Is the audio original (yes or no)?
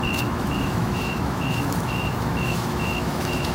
no